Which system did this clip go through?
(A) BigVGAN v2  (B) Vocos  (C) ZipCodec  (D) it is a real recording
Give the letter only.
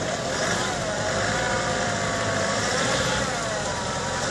A